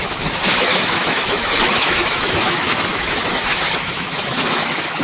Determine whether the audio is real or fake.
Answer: fake